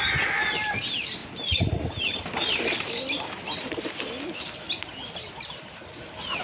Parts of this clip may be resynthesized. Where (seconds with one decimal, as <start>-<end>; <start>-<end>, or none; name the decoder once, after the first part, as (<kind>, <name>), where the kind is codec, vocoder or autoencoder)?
none

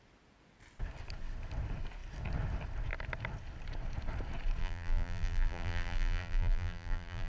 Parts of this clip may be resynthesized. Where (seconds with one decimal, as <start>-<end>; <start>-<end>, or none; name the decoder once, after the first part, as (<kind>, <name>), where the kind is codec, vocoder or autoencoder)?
4.6-7.3 (vocoder, BigVGAN v2)

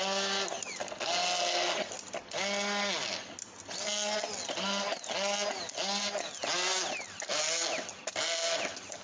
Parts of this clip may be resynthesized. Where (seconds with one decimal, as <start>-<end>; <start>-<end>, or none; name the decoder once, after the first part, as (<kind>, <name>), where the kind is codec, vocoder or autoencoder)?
none

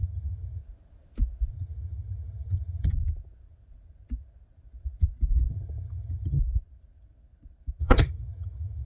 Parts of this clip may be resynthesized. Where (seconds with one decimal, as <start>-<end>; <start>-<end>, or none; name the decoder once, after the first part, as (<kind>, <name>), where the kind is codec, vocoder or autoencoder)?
0.0-0.6 (vocoder, HiFi-GAN); 1.5-2.9; 5.5-6.4; 7.8-8.8

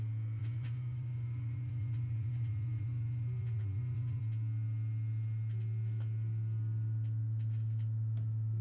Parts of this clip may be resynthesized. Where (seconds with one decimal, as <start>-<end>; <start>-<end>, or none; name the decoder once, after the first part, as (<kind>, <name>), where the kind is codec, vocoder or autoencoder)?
0.4-4.2 (vocoder, Vocos)

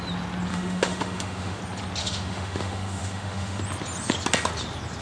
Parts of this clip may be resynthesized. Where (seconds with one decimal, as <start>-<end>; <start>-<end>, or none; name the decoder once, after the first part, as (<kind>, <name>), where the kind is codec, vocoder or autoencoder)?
0.5-1.6 (autoencoder, DAC-VAE); 2.0-3.6

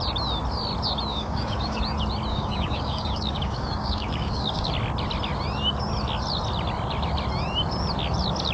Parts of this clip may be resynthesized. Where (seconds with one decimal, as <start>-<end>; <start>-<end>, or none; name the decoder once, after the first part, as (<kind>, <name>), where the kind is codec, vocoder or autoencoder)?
1.1-1.8 (codec, DAC); 2.3-4.7